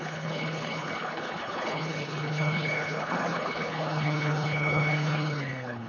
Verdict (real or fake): fake